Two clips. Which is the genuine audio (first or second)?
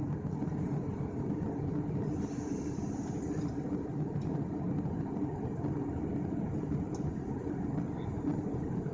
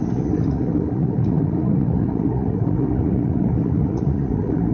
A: first